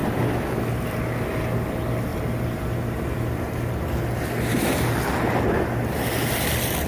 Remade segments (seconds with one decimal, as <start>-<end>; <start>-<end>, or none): none